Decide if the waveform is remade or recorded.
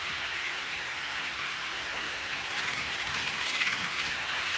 remade